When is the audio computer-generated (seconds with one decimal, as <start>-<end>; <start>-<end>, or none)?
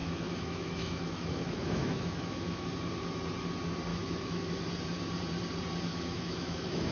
0.0-2.7; 3.9-4.5; 5.9-6.9